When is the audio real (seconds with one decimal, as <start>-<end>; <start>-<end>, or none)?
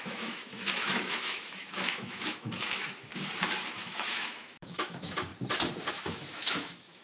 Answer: 3.1-3.7; 5.3-5.9